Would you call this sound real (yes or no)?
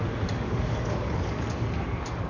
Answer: no